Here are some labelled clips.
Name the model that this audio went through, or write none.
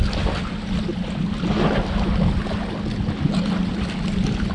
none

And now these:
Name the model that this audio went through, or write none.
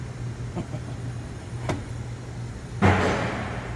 none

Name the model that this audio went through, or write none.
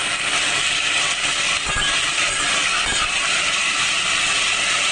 none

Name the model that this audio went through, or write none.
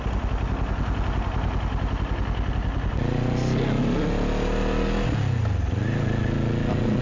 none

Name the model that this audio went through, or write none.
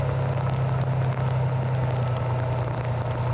none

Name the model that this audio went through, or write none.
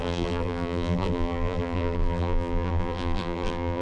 vocoder, BigVGAN v2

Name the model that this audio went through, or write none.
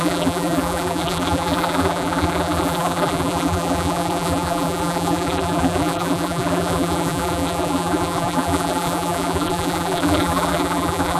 vocoder, BigVGAN v2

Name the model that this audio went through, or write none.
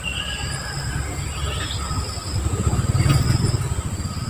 none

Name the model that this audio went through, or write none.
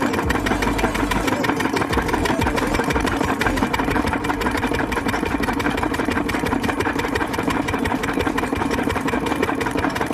vocoder, BigVGAN v2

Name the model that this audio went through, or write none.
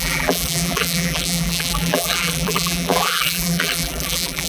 vocoder, BigVGAN v2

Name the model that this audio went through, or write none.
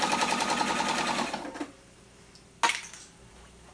none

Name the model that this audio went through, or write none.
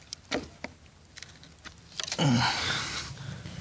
none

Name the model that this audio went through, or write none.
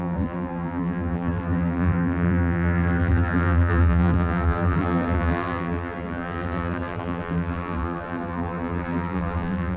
vocoder, BigVGAN v2